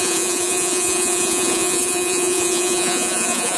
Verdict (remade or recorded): remade